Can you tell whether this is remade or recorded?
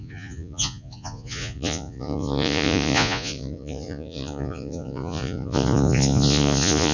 remade